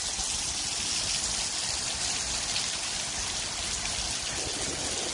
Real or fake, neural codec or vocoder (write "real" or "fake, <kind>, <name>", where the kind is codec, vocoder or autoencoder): real